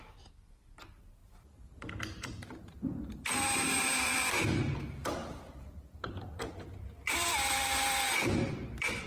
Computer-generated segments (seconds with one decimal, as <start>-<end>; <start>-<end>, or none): 1.2-4.1; 5.2-8.5